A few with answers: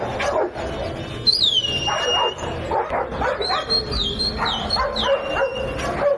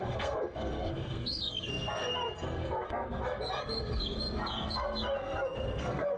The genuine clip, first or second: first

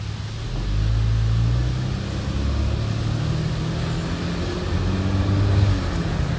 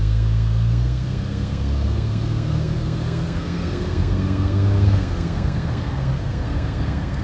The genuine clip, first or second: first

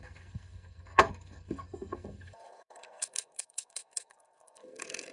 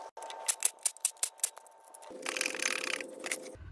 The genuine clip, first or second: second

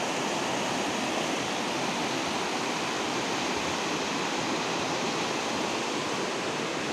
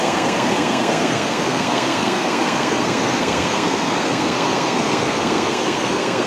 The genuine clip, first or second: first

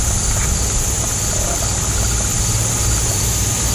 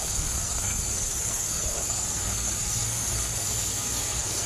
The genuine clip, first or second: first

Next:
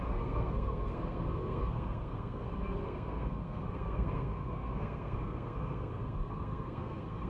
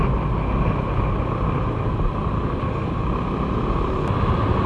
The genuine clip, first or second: second